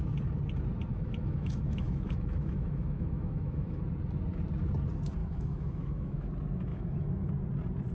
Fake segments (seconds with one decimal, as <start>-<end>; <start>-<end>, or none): 0.9-3.8; 5.2-6.3; 6.7-7.3